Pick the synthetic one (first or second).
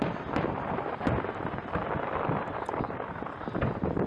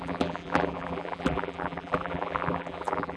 second